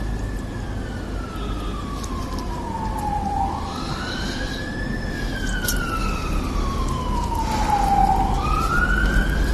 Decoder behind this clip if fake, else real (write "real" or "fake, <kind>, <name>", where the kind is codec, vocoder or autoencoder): real